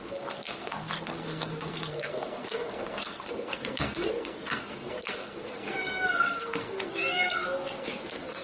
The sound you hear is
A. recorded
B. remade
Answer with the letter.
B